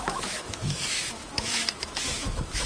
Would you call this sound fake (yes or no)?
yes